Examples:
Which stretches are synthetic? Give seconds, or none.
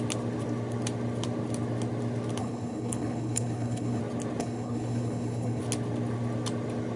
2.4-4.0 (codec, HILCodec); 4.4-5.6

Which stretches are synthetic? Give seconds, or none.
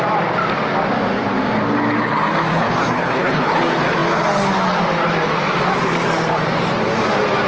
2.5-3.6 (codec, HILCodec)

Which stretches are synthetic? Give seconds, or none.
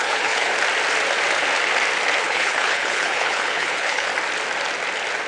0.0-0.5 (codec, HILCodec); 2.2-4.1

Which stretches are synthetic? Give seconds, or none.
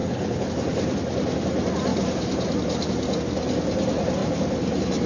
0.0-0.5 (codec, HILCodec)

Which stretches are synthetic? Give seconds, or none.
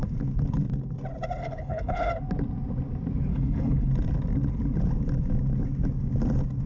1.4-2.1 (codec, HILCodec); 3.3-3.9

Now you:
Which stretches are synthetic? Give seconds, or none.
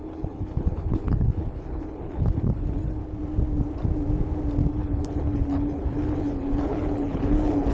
0.0-3.0 (codec, HILCodec); 4.7-7.7